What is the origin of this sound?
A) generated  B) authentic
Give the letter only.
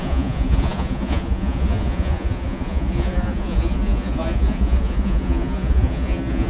A